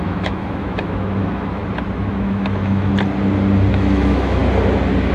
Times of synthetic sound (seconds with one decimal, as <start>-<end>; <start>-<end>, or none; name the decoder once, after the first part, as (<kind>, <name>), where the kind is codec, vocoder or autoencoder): 0.0-1.6 (autoencoder, DAC-VAE); 2.1-2.9; 3.7-4.4